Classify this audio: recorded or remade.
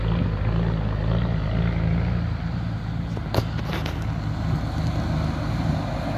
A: recorded